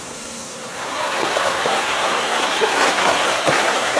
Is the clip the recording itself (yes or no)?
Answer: no